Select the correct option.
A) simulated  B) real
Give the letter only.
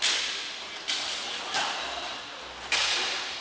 B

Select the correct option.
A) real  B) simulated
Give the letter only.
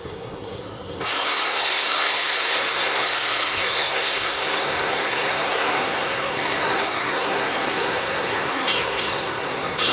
B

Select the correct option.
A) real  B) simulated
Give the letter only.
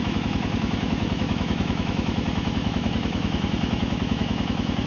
B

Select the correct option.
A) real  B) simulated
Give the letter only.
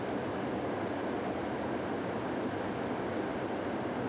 A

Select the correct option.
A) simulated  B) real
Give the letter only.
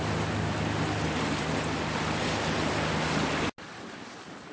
B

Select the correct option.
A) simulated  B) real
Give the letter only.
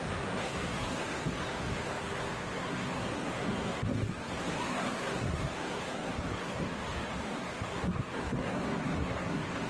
A